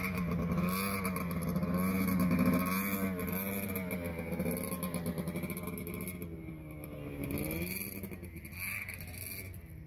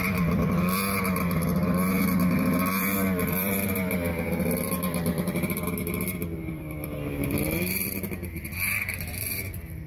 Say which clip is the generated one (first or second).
second